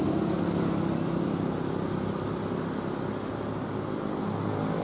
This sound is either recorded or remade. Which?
recorded